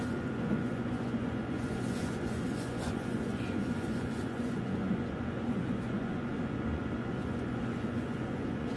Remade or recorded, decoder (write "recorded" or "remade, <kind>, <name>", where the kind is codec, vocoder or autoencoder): remade, vocoder, Vocos